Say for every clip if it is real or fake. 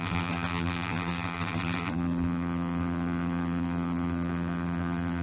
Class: fake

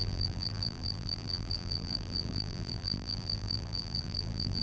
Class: fake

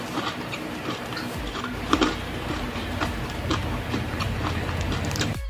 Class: fake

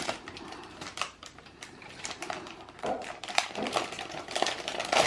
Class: fake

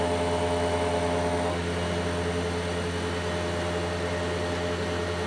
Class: real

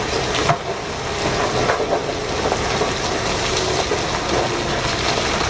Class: real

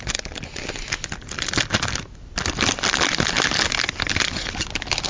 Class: real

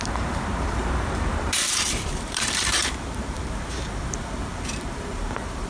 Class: fake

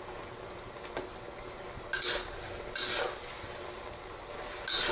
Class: real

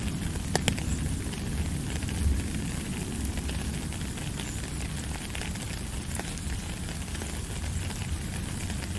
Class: fake